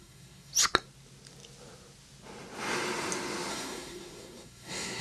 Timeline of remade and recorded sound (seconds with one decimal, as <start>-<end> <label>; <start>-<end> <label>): 0.0-0.5 remade; 0.5-3.5 recorded; 3.5-5.0 remade